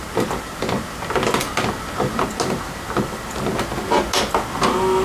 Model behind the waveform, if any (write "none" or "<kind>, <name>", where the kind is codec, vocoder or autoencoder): none